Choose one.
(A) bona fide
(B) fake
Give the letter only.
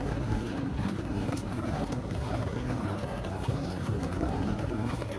B